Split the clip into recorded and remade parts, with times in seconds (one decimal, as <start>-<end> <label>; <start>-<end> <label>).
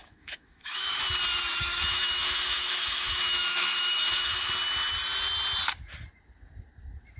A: 0.0-1.0 remade; 1.0-1.6 recorded; 1.6-4.5 remade; 4.5-7.2 recorded